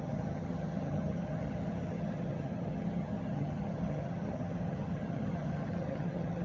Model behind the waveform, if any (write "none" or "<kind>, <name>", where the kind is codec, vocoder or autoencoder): vocoder, HiFi-GAN